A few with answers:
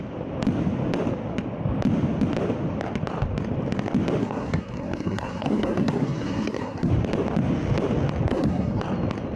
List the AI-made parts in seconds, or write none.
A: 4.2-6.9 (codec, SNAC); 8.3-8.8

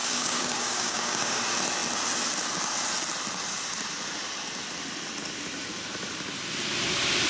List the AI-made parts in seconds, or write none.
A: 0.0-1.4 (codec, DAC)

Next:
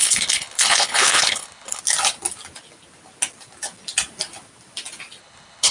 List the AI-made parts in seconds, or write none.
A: 0.0-1.8 (codec, HILCodec); 5.2-5.7

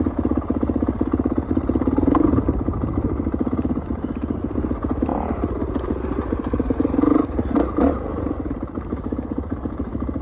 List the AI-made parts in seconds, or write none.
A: none